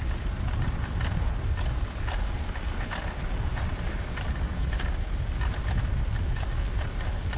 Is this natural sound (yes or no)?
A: yes